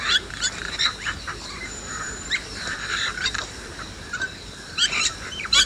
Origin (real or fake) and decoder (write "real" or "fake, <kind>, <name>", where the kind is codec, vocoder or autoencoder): fake, vocoder, BigVGAN v2